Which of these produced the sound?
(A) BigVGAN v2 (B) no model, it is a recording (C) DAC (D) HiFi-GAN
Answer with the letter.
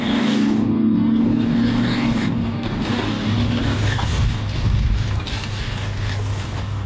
C